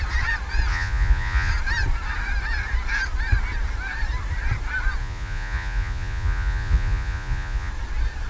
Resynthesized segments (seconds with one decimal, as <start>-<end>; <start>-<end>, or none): 0.7-1.5; 5.0-7.7